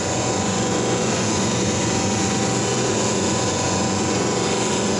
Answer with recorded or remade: remade